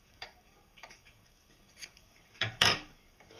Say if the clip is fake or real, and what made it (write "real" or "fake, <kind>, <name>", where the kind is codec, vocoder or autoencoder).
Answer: fake, codec, DAC